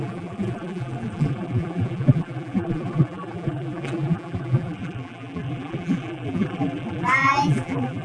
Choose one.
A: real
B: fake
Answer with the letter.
B